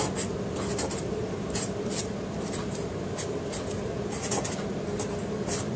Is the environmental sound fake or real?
real